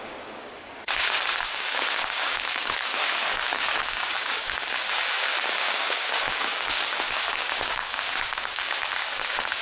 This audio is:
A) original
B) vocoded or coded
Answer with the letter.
B